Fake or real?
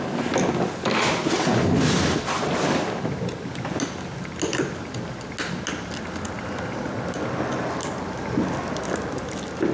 real